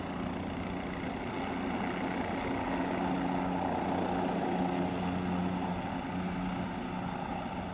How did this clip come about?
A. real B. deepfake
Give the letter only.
A